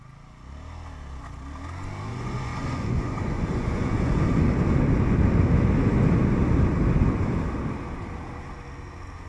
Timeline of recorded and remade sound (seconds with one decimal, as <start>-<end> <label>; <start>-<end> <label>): 0.0-2.1 recorded; 2.1-4.2 remade; 4.2-9.3 recorded